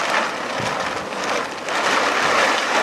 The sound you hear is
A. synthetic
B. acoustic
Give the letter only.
A